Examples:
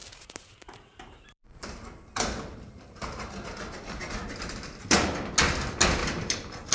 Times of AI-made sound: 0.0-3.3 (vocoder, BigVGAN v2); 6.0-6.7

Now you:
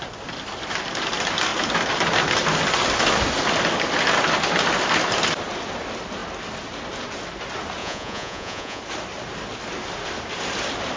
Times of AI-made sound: 7.8-8.8 (vocoder, Vocos)

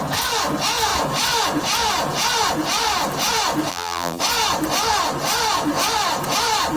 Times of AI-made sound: 3.7-4.2 (vocoder, BigVGAN v2)

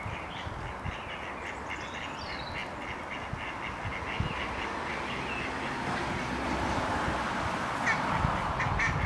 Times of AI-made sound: none

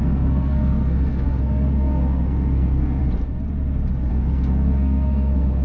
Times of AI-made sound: 0.0-3.0 (codec, SNAC); 4.1-5.6